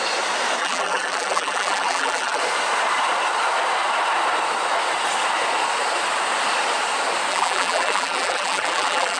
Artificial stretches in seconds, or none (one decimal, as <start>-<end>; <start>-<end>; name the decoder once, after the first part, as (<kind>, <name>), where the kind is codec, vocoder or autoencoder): 0.6-2.4 (vocoder, BigVGAN v2); 7.3-9.2